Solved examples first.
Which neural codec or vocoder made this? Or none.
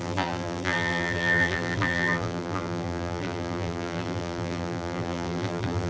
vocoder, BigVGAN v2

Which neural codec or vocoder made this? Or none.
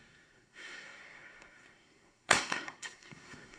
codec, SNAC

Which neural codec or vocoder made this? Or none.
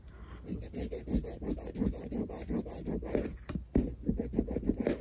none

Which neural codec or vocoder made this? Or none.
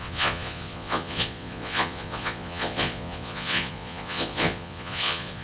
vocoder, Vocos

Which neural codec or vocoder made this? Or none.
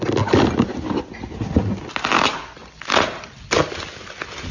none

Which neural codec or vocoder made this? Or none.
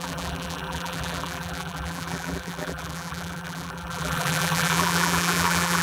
vocoder, BigVGAN v2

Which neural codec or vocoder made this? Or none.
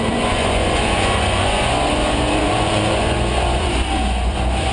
vocoder, Vocos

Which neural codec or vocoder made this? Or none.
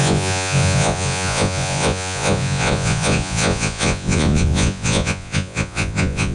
vocoder, Vocos